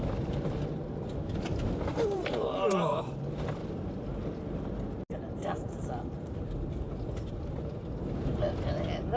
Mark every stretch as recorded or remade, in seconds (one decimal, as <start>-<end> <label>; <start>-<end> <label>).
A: 0.0-1.9 recorded; 1.9-2.9 remade; 2.9-9.2 recorded